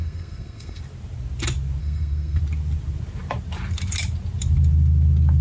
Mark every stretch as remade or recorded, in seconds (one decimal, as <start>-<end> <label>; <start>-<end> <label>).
0.0-0.8 remade; 0.8-1.8 recorded; 1.8-2.4 remade; 2.4-5.4 recorded